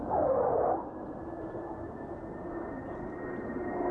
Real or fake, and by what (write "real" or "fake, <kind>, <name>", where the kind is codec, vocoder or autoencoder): real